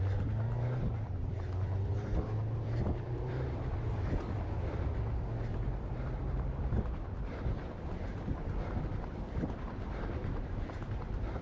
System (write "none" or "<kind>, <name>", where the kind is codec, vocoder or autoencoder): vocoder, BigVGAN v2